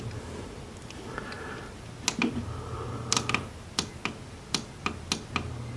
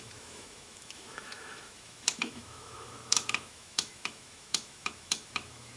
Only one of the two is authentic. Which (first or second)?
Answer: first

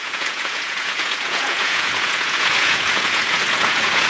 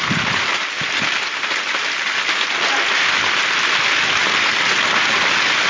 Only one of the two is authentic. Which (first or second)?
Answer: second